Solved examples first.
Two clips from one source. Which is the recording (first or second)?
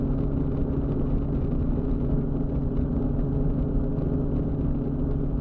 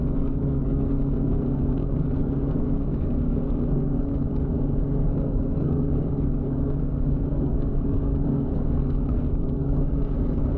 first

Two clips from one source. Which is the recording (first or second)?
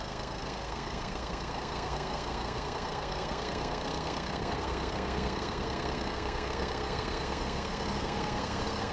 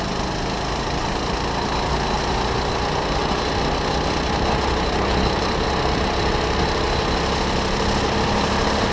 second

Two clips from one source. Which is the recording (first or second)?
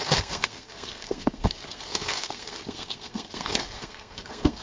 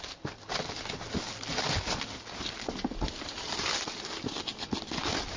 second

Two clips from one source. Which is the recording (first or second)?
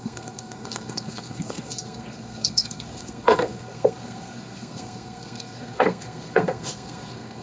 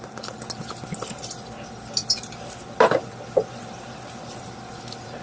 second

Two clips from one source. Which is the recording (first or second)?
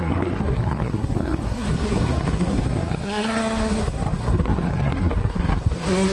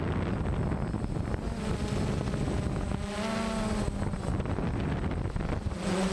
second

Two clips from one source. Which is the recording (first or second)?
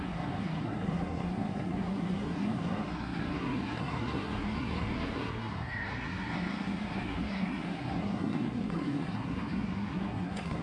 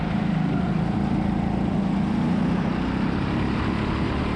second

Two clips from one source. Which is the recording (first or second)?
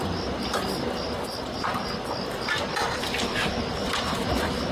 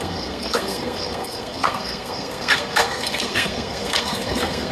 first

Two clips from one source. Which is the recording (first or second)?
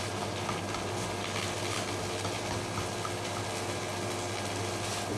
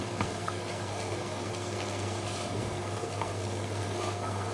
first